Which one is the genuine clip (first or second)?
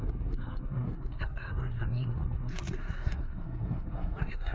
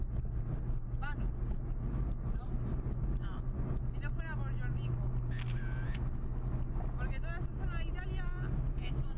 second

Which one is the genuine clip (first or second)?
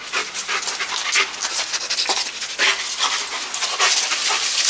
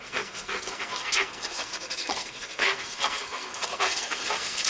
first